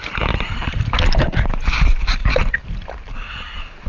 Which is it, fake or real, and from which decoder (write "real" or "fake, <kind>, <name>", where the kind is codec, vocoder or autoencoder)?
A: real